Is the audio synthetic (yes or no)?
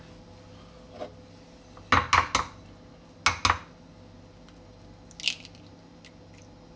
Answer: no